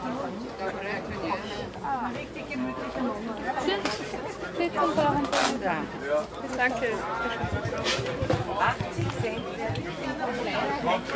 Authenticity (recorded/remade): recorded